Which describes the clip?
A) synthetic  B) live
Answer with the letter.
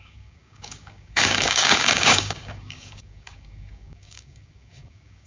A